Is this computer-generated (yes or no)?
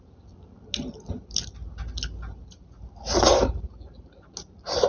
no